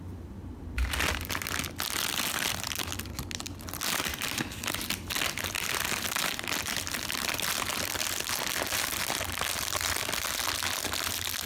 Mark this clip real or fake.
real